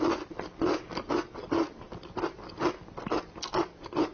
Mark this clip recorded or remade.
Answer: recorded